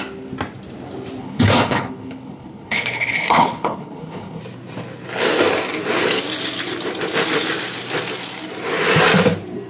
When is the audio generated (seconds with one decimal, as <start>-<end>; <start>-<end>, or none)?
1.2-4.4